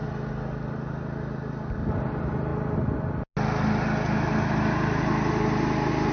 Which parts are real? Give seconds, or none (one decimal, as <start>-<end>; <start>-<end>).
0.0-6.1